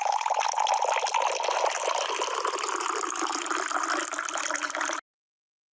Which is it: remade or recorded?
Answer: recorded